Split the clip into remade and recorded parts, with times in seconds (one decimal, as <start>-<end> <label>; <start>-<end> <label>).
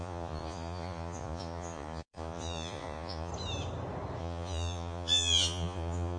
0.0-3.3 remade; 3.3-4.2 recorded; 4.2-6.2 remade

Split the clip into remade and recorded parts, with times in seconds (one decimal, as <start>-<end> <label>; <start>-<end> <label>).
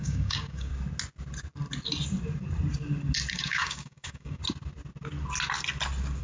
0.0-0.7 remade; 0.7-3.3 recorded; 3.3-4.4 remade; 4.4-6.2 recorded